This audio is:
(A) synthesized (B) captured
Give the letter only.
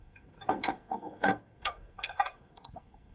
A